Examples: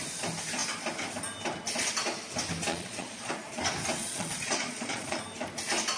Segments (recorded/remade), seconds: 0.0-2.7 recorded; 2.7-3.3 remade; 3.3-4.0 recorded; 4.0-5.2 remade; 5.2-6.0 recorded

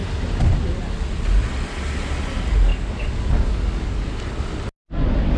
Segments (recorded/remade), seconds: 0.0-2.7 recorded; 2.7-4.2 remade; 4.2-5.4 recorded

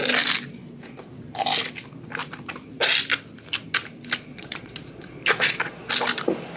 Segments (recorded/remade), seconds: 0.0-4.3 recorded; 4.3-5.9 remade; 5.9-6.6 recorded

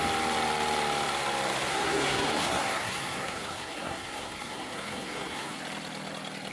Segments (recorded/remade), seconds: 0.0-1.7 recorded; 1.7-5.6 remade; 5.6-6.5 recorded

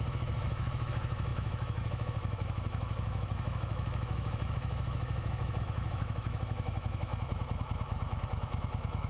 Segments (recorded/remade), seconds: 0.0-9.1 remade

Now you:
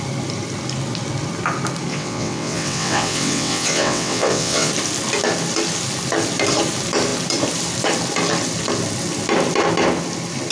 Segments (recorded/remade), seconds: 0.0-1.9 recorded; 1.9-4.7 remade; 4.7-10.5 recorded

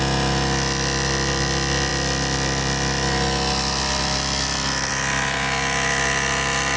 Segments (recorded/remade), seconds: 0.0-6.8 recorded